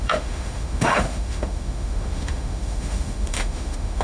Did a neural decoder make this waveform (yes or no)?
yes